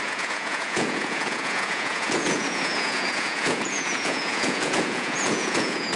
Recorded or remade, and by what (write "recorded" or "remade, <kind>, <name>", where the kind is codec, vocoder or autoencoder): remade, vocoder, Vocos